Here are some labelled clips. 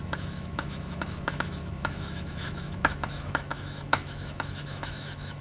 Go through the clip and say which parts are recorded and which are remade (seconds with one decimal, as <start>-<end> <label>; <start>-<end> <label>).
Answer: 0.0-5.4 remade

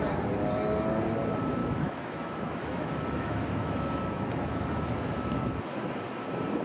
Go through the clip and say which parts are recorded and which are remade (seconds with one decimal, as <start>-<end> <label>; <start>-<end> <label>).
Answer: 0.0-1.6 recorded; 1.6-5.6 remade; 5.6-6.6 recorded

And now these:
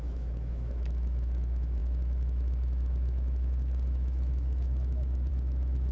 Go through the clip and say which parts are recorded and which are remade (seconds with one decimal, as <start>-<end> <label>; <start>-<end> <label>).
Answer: 0.0-5.9 remade

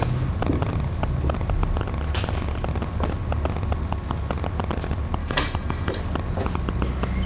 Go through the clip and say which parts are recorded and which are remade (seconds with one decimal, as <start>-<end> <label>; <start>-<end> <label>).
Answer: 0.0-5.2 recorded; 5.2-6.0 remade; 6.0-7.3 recorded

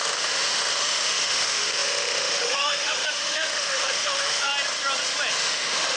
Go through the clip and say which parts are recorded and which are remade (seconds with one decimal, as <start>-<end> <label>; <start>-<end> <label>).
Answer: 0.0-4.5 remade; 4.5-5.3 recorded; 5.3-6.0 remade

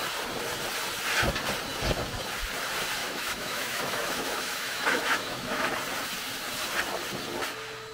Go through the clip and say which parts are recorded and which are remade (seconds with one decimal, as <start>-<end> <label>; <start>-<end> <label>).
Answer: 0.0-3.0 recorded; 3.0-5.7 remade; 5.7-7.9 recorded

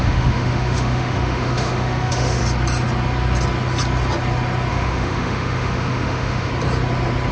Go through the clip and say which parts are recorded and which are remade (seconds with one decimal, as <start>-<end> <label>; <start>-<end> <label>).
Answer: 0.0-2.4 remade; 2.4-4.7 recorded; 4.7-6.5 remade; 6.5-7.3 recorded